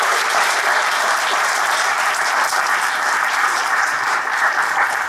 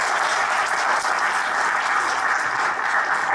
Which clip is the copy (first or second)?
first